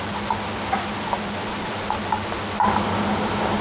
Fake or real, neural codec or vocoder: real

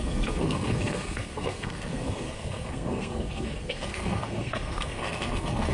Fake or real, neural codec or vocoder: fake, codec, SNAC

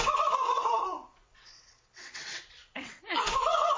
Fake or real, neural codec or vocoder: fake, vocoder, WaveNeXt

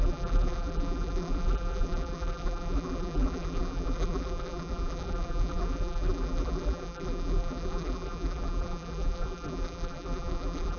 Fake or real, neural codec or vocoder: fake, vocoder, BigVGAN v2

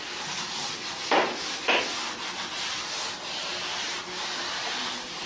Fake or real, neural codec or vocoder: real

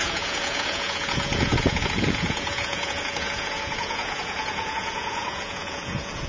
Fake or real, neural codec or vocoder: fake, vocoder, Vocos